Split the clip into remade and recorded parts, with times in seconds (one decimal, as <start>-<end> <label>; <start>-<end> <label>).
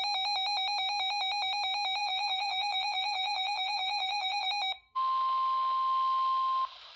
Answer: 0.0-2.0 recorded; 2.0-4.5 remade; 4.5-7.0 recorded